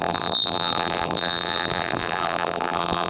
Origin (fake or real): fake